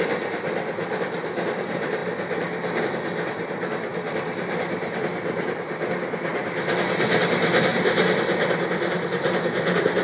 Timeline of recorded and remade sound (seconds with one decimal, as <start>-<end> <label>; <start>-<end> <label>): 0.0-10.0 recorded